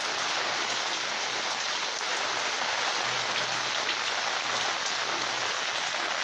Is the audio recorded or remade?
recorded